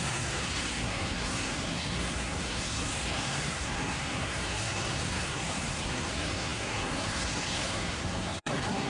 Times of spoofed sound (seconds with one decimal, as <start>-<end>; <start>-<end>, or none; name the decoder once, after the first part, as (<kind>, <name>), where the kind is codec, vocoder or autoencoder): 0.0-8.9 (codec, SNAC)